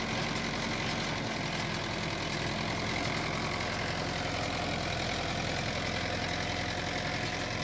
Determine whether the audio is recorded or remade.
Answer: recorded